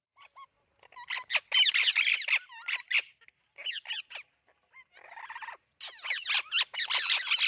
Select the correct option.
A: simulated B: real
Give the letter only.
B